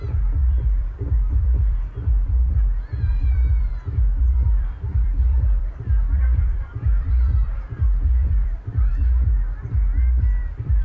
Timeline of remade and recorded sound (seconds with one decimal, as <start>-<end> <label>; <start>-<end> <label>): 0.0-8.9 remade; 8.9-10.4 recorded; 10.4-10.8 remade